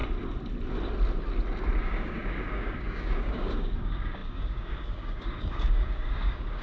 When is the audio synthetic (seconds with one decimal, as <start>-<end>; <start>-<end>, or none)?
1.8-6.6